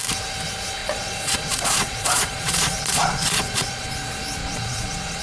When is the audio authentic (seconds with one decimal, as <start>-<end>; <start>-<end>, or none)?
0.0-0.8; 3.9-4.4